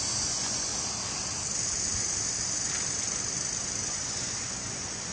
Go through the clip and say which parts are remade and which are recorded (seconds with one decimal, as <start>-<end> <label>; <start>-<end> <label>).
0.0-0.7 remade; 0.7-3.8 recorded; 3.8-5.1 remade